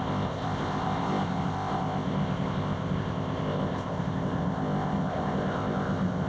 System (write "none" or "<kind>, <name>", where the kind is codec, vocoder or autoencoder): codec, ZipCodec